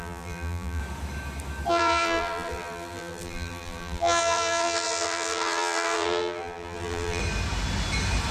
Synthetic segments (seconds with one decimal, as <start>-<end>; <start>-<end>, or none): 0.0-0.8; 1.7-7.2